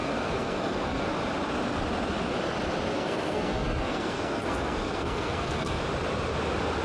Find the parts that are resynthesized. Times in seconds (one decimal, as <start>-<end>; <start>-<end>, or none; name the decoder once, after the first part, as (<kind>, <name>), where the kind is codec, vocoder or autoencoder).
0.0-1.0 (codec, SNAC); 2.9-5.8